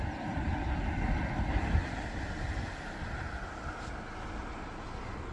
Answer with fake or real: real